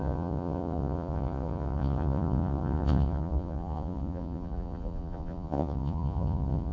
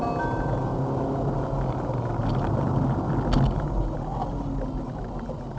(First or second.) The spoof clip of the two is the first